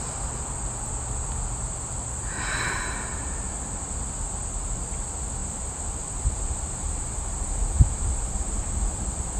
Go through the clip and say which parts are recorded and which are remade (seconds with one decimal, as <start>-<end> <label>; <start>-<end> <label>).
0.0-5.4 recorded; 5.4-8.7 remade; 8.7-9.4 recorded